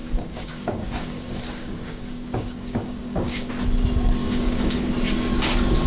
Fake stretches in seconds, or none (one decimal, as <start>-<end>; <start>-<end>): 0.0-3.5; 4.2-4.9